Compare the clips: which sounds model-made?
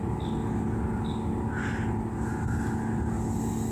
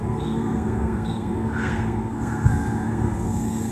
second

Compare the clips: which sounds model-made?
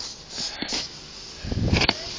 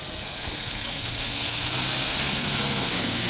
second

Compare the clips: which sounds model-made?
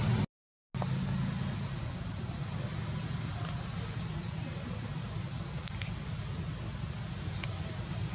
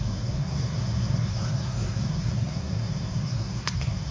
second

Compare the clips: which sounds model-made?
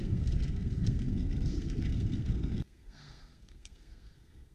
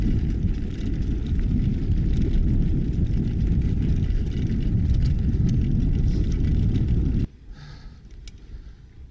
first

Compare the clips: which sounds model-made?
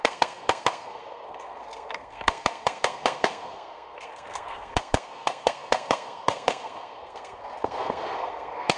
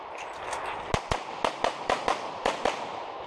first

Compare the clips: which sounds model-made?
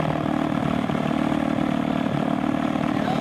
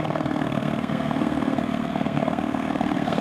second